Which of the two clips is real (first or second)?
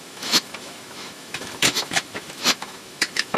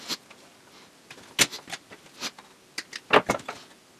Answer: second